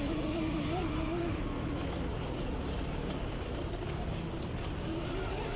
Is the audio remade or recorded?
recorded